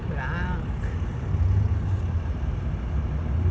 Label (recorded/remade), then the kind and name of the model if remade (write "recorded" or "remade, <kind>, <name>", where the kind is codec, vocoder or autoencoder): recorded